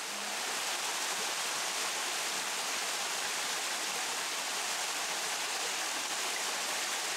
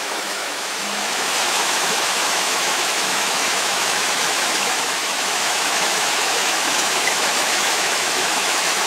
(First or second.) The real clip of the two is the first